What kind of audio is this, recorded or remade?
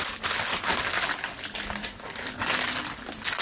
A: recorded